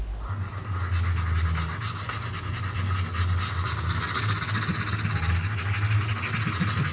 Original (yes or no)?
yes